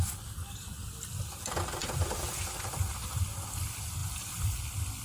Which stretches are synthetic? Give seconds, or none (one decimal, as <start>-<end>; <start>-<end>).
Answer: 4.0-4.6